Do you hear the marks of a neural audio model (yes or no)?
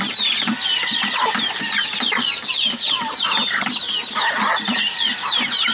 no